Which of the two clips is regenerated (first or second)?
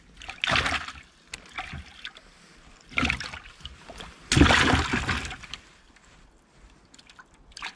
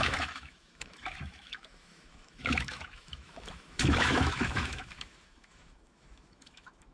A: second